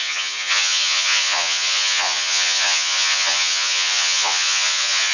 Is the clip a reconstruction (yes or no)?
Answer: yes